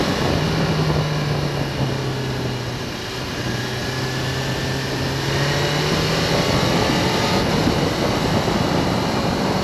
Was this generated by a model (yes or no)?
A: no